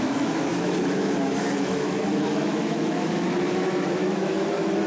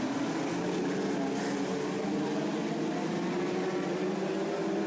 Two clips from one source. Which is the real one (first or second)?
second